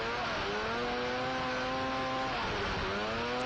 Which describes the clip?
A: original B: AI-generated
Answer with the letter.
A